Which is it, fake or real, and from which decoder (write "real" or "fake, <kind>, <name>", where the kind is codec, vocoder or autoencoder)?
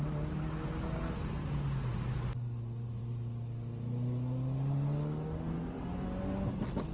real